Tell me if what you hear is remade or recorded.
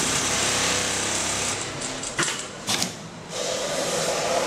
remade